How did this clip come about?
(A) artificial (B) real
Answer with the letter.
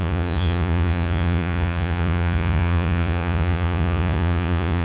A